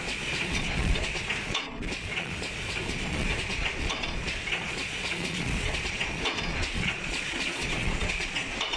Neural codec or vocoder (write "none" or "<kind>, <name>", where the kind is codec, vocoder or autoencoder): vocoder, Vocos